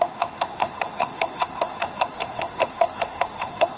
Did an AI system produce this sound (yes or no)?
yes